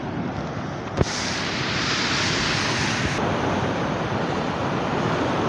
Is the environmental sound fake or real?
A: real